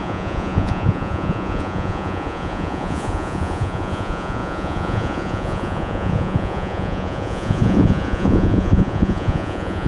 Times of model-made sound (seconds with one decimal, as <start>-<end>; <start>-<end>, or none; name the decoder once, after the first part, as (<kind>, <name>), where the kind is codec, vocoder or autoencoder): 0.0-9.9 (vocoder, Vocos)